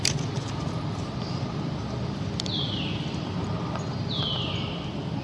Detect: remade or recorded remade